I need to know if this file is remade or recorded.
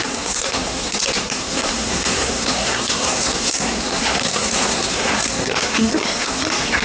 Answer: remade